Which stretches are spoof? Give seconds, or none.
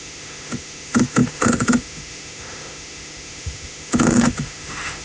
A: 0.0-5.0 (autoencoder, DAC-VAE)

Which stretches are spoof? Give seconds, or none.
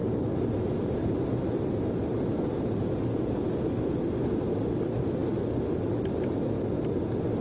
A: none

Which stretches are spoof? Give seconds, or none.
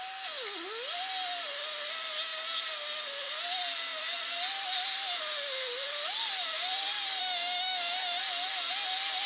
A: 7.2-8.2 (autoencoder, DAC-VAE)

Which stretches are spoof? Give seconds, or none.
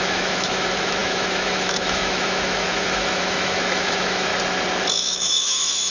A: 0.0-4.3 (autoencoder, DAC-VAE); 4.9-5.9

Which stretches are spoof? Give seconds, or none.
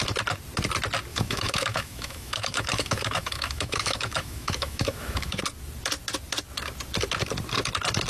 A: 1.1-5.4 (autoencoder, DAC-VAE)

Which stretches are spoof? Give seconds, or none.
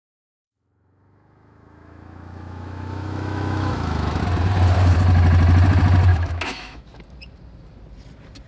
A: 0.4-4.2 (autoencoder, DAC-VAE); 6.1-7.0